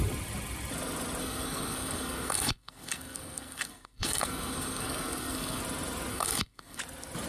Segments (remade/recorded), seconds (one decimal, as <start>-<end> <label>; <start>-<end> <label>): 0.0-1.2 recorded; 1.2-5.6 remade; 5.6-6.1 recorded; 6.1-6.8 remade; 6.8-7.3 recorded